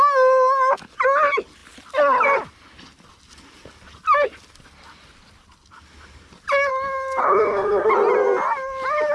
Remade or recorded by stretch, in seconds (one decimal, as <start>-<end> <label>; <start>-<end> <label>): 0.0-7.2 recorded; 7.2-7.9 remade; 7.9-9.1 recorded